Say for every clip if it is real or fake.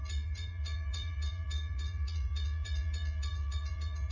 fake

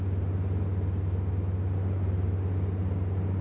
real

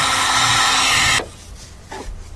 real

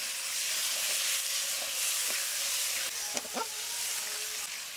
real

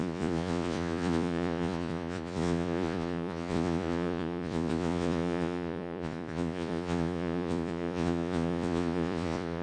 fake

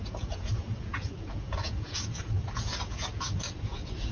fake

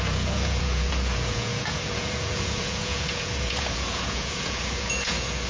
fake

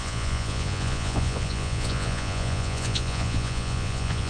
fake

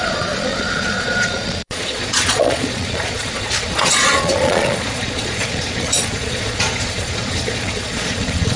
fake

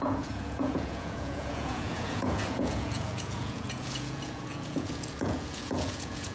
fake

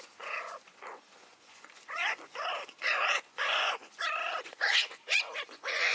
fake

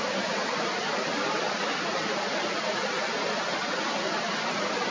real